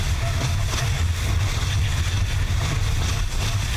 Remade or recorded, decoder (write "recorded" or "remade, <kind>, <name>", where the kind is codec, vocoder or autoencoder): recorded